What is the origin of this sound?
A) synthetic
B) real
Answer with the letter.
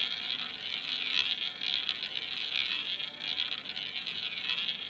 B